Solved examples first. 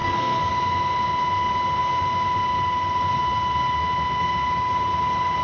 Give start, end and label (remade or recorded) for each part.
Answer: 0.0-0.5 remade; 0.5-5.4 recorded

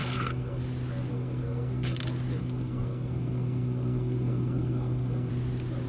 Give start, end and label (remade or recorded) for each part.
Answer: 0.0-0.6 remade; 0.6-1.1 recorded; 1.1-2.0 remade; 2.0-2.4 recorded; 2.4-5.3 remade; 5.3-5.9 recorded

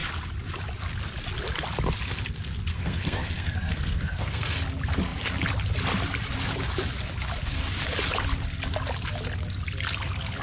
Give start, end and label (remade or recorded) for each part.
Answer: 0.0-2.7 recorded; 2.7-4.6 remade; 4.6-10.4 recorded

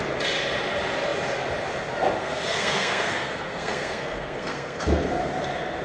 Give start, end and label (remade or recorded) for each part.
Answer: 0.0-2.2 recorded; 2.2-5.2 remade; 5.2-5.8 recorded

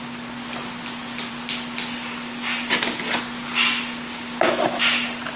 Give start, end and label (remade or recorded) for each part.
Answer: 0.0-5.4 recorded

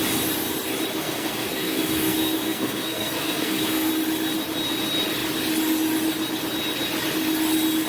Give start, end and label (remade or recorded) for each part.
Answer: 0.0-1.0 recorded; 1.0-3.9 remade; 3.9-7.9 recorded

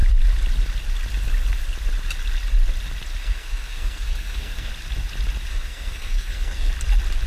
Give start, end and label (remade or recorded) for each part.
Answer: 0.0-3.2 recorded; 3.2-4.7 remade; 4.7-5.5 recorded; 5.5-6.7 remade; 6.7-7.3 recorded

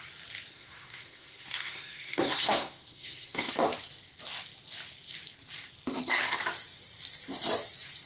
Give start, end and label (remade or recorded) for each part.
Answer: 0.0-0.5 recorded; 0.5-3.5 remade; 3.5-8.1 recorded